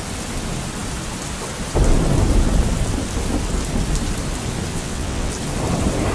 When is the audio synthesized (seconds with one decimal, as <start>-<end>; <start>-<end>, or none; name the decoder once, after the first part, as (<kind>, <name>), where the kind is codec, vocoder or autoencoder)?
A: 4.7-5.3 (vocoder, WaveNeXt)